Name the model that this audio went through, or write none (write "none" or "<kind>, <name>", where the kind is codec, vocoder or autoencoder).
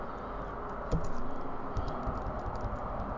none